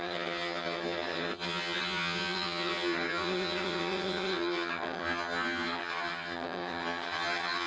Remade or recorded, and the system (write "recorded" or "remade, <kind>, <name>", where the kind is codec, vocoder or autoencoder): remade, vocoder, HiFi-GAN